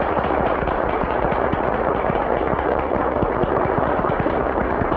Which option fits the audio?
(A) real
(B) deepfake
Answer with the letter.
B